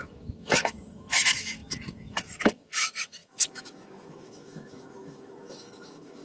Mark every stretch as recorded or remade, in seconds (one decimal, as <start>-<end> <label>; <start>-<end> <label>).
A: 0.0-6.2 remade